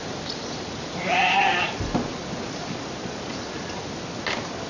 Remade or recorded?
recorded